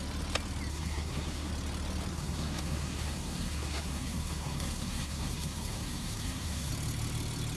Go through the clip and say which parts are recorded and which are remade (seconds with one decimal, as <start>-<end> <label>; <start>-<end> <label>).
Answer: 0.0-0.7 recorded; 0.7-1.5 remade; 1.5-2.1 recorded; 2.1-6.7 remade; 6.7-7.6 recorded